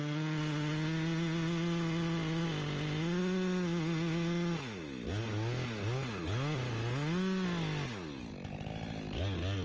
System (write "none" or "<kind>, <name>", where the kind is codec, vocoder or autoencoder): none